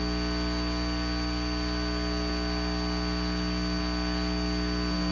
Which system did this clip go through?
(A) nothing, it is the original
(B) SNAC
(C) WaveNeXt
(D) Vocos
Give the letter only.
A